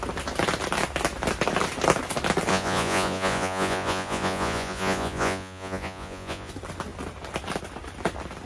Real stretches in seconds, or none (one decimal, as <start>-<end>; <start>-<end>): 0.0-2.5; 6.5-8.5